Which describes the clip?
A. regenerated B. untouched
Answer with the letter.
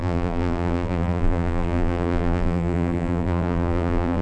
A